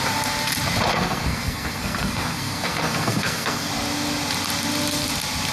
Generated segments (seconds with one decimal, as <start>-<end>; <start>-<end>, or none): 0.9-3.7